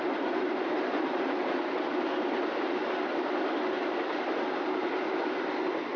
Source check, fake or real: real